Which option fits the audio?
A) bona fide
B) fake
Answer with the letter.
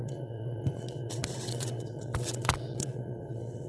B